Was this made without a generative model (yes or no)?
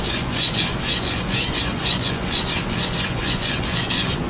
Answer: no